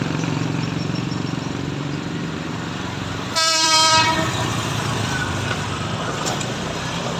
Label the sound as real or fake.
fake